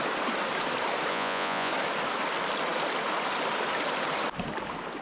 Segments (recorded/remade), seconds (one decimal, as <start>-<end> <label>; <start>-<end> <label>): 0.0-1.1 recorded; 1.1-1.7 remade; 1.7-5.0 recorded